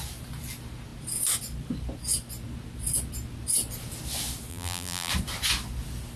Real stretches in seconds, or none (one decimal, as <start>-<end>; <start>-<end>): 0.0-4.5; 5.1-6.2